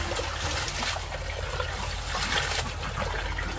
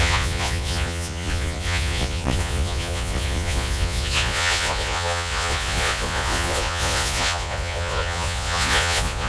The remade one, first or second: second